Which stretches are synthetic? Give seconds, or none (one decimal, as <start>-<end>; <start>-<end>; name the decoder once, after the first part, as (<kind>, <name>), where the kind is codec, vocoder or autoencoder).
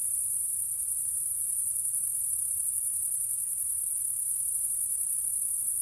0.0-2.1 (vocoder, BigVGAN v2); 4.5-5.8